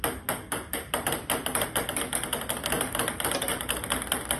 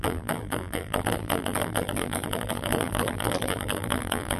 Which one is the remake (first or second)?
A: second